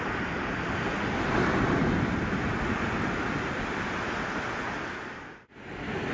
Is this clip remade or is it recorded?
recorded